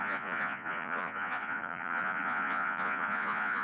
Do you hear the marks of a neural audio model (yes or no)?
yes